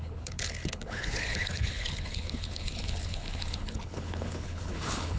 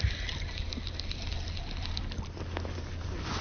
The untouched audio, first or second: second